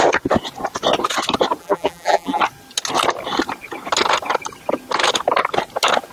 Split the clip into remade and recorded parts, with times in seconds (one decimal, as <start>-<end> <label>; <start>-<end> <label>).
0.0-1.6 recorded; 1.6-2.4 remade; 2.4-6.1 recorded